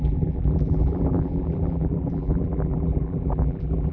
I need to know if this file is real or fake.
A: fake